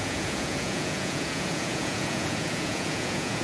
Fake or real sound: fake